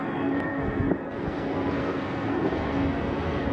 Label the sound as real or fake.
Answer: fake